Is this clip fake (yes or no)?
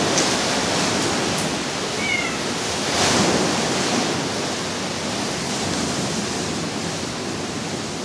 no